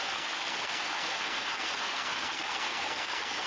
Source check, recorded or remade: remade